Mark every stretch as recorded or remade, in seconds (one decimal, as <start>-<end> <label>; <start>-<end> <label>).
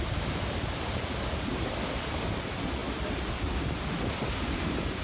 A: 0.0-5.0 recorded